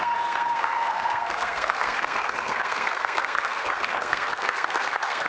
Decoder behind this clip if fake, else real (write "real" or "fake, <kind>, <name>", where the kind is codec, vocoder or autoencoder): fake, codec, SNAC